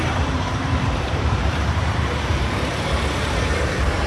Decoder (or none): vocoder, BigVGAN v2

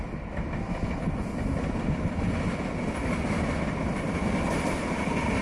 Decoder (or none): none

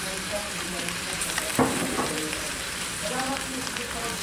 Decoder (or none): vocoder, BigVGAN v2